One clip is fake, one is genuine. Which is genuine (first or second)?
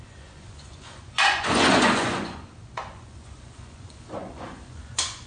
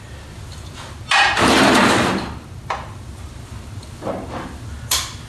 second